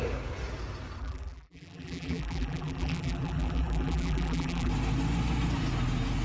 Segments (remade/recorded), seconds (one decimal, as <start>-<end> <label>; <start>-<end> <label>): 0.0-1.0 recorded; 1.0-4.7 remade; 4.7-6.2 recorded